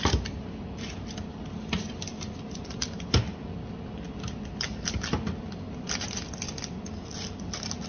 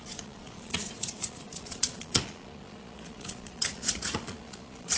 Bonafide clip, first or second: first